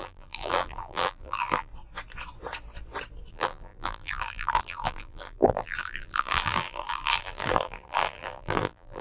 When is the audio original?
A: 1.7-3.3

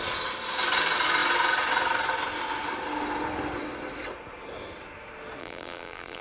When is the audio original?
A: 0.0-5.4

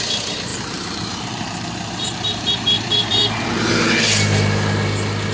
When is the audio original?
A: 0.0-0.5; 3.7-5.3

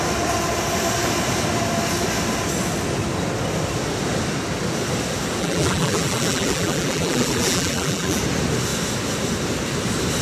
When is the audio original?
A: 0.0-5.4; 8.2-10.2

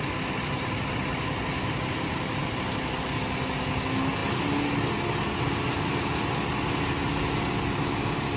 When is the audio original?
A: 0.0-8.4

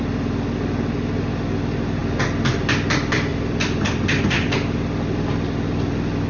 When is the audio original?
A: 0.0-2.0; 2.7-3.3

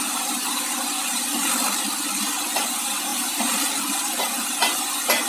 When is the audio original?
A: 0.0-3.1; 3.7-5.3